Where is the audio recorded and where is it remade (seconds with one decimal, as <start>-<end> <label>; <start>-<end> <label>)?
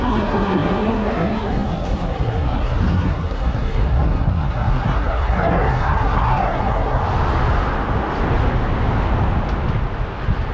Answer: 0.0-7.0 remade; 7.0-10.5 recorded